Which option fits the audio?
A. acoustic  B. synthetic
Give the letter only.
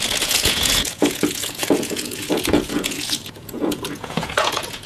B